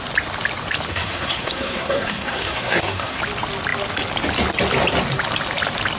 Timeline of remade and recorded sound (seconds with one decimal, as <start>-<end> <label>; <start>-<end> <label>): 0.0-0.9 recorded; 0.9-3.2 remade; 3.2-6.0 recorded